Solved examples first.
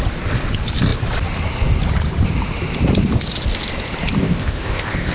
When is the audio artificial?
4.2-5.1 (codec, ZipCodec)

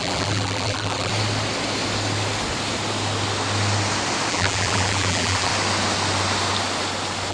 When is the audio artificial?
0.0-1.1 (vocoder, BigVGAN v2); 4.3-5.5

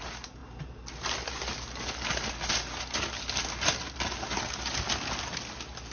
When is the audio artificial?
none

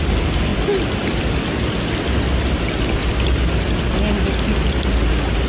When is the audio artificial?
none

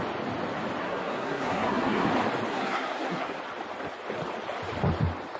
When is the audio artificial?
0.8-2.1 (codec, SNAC); 2.5-3.4